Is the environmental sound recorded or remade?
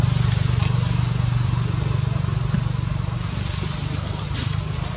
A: recorded